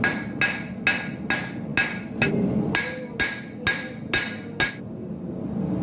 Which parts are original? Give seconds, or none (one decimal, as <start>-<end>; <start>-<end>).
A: 0.0-5.8